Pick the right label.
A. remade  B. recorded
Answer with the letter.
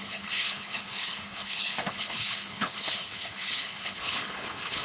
A